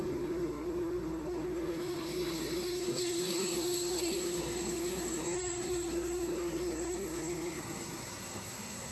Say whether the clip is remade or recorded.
remade